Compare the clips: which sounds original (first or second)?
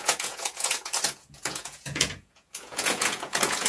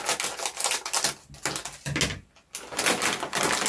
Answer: second